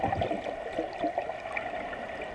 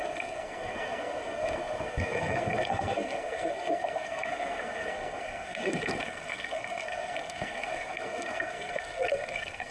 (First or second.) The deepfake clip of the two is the second